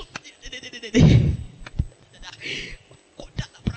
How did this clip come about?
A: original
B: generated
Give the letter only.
A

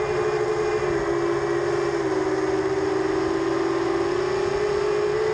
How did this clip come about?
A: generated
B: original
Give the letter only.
B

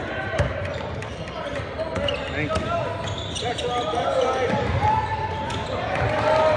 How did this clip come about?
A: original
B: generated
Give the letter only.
A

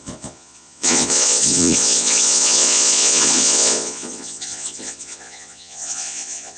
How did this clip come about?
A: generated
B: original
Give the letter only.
A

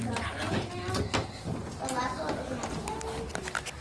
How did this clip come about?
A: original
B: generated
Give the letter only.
A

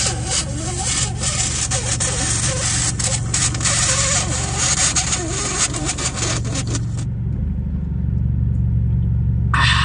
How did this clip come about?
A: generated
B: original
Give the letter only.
B